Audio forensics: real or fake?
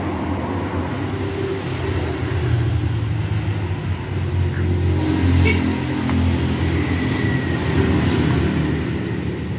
real